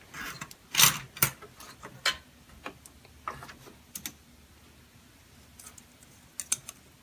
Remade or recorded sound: recorded